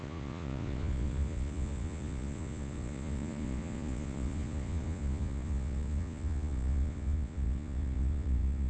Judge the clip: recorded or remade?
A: remade